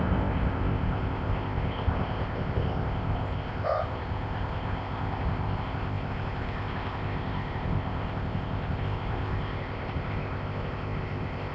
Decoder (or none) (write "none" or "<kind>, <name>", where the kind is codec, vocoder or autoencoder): codec, ZipCodec